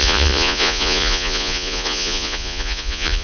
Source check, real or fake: fake